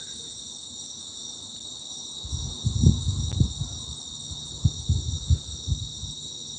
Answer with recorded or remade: recorded